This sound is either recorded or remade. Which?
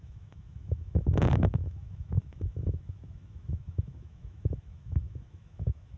remade